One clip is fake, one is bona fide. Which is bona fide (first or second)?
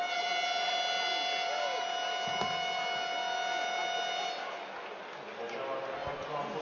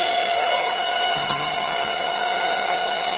first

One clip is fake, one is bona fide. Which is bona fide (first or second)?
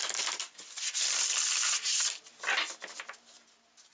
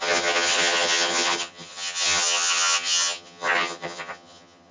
first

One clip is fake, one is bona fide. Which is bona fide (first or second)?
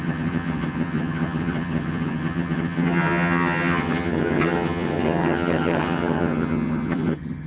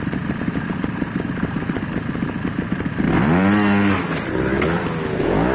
second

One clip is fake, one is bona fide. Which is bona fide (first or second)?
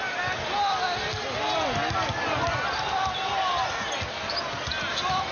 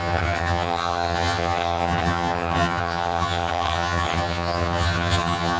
first